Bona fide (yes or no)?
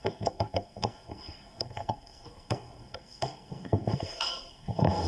no